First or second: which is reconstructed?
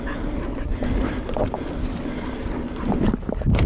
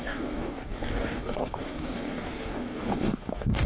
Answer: second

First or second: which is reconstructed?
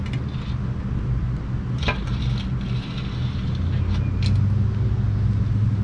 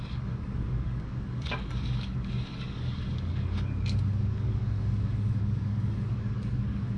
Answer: second